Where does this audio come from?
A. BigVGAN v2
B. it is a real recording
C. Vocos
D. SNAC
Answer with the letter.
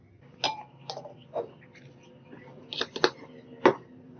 B